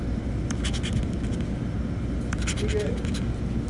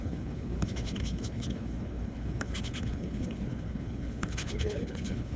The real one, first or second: first